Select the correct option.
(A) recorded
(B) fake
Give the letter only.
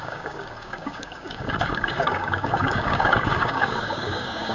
B